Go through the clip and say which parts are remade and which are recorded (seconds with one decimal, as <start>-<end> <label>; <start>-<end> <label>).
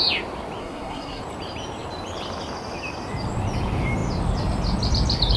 0.0-0.6 recorded; 0.6-1.2 remade; 1.2-5.4 recorded